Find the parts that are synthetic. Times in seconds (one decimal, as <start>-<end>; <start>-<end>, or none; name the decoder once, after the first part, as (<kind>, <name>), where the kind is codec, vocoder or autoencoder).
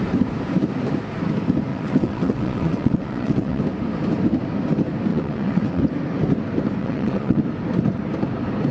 1.7-3.6 (vocoder, WaveNeXt); 5.1-5.8; 6.8-7.4